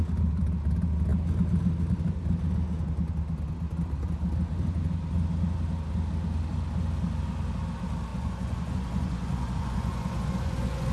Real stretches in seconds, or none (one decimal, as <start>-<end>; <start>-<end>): 0.0-8.1